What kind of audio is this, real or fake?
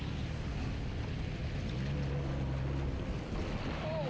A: real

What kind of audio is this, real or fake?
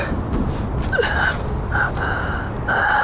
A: real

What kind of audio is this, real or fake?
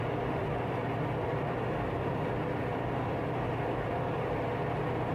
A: fake